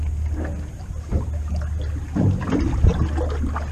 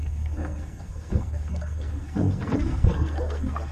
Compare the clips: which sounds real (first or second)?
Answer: first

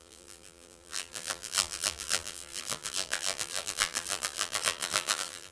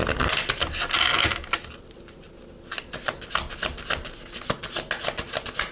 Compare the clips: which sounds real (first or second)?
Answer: second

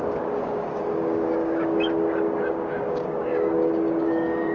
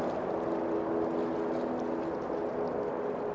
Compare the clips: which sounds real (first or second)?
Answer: second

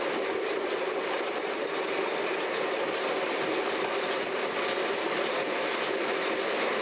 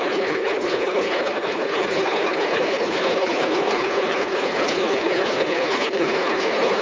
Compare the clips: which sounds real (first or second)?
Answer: first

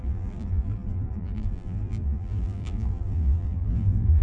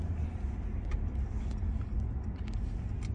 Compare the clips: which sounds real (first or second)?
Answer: second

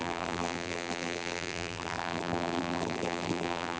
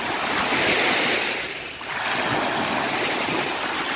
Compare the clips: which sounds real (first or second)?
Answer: second